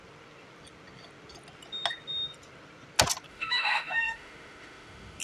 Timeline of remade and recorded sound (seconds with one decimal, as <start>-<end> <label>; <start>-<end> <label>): 0.0-3.3 recorded; 3.3-5.2 remade